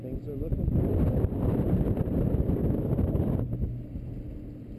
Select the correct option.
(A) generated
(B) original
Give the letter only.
B